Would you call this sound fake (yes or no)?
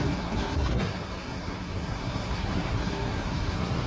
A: yes